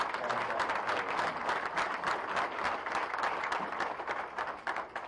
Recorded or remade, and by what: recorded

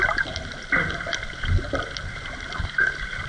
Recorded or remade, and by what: remade, vocoder, BigVGAN v2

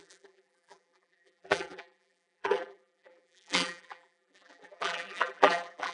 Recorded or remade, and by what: remade, vocoder, BigVGAN v2